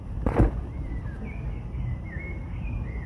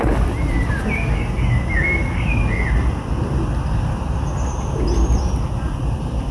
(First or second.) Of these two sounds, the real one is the second